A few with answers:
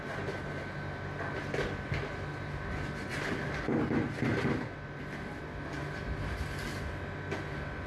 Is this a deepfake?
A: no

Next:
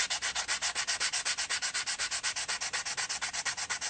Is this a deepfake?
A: no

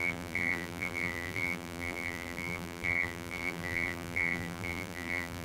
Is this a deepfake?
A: yes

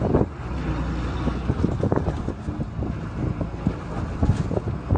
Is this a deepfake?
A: no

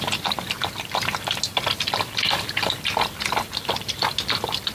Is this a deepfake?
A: yes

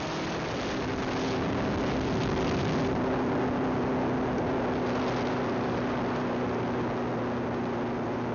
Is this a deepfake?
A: no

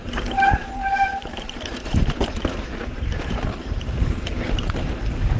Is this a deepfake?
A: yes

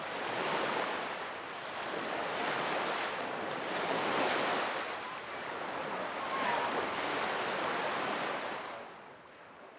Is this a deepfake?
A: no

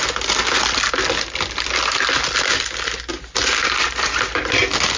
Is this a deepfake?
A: no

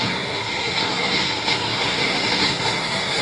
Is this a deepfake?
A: yes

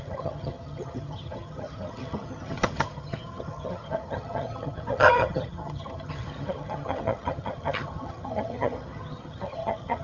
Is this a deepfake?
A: yes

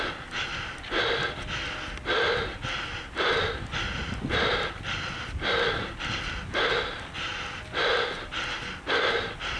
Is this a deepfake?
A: no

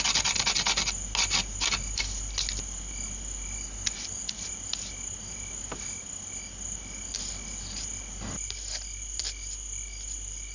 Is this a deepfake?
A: no